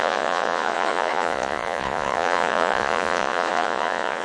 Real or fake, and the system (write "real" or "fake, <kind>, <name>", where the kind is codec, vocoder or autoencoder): fake, vocoder, Vocos